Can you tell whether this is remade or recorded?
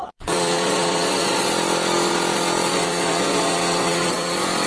remade